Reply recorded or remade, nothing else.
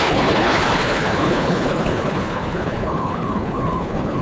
remade